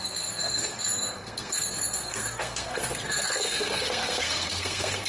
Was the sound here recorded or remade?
remade